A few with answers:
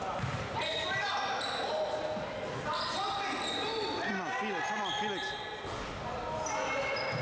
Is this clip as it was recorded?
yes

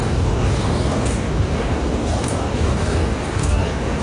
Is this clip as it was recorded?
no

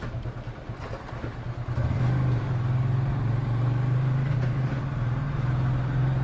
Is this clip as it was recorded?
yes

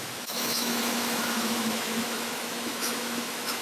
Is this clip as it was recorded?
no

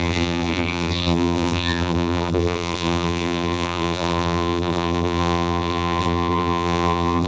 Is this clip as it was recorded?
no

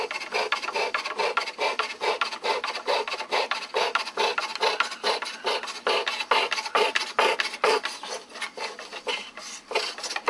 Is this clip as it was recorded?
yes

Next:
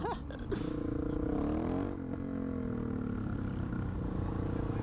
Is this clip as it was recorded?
yes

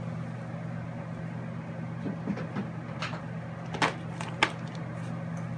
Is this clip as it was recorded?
yes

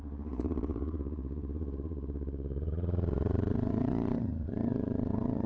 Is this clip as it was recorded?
no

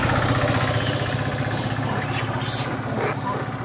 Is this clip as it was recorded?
yes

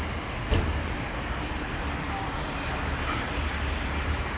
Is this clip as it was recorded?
yes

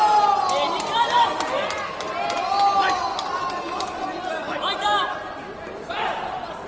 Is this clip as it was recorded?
yes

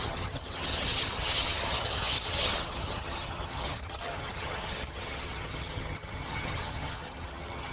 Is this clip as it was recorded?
no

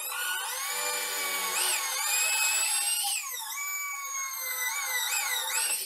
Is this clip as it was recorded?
yes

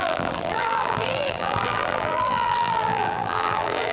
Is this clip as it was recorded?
no